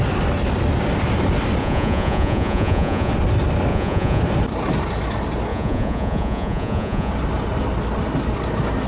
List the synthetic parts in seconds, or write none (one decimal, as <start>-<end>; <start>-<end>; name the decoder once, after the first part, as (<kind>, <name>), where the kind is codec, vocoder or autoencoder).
1.6-3.1 (vocoder, Vocos); 3.7-4.2; 5.5-7.1